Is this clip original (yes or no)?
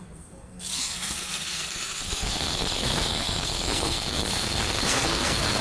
no